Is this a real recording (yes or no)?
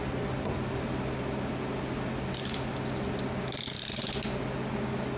yes